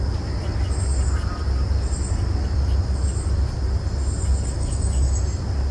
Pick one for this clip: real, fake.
real